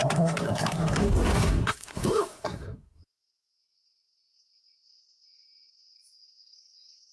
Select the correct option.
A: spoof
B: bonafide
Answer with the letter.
A